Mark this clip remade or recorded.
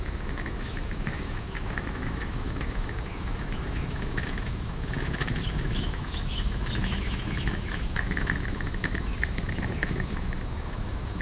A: remade